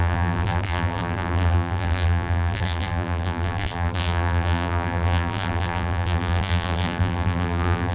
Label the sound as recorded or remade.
remade